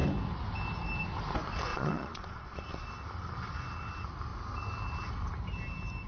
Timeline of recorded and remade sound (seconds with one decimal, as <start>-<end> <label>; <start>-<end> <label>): 0.0-1.7 recorded; 1.7-2.9 remade; 2.9-6.1 recorded

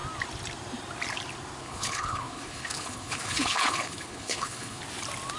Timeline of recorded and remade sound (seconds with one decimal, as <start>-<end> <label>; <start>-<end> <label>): 0.0-1.6 recorded; 1.6-4.8 remade; 4.8-5.4 recorded

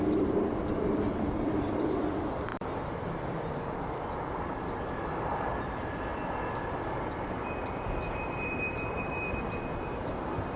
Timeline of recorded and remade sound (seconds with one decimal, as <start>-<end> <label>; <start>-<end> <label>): 0.0-10.6 remade

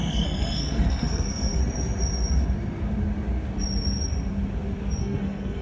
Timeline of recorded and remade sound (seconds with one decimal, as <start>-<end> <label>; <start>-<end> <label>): 0.0-1.6 remade; 1.6-5.0 recorded; 5.0-5.6 remade

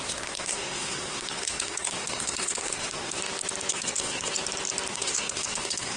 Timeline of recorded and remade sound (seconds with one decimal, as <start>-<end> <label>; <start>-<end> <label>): 0.0-3.2 remade; 3.2-3.7 recorded; 3.7-4.3 remade; 4.3-4.9 recorded; 4.9-6.0 remade